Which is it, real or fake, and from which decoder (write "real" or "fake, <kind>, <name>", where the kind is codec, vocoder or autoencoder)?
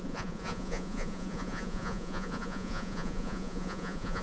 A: fake, vocoder, Vocos